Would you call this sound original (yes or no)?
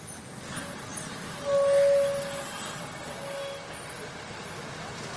yes